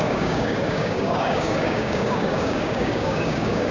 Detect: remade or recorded remade